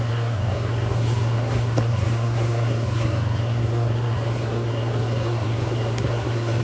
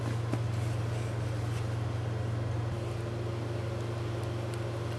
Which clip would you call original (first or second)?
second